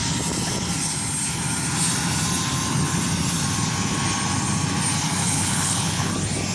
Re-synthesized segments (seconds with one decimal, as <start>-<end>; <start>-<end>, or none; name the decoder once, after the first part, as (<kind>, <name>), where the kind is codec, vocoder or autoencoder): 5.2-6.1 (codec, HILCodec)